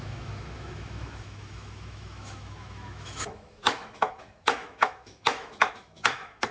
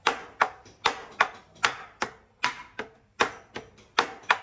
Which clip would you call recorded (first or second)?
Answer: second